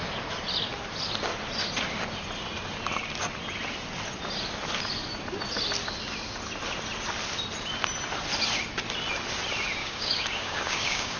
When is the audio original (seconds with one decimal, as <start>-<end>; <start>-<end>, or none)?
0.0-9.8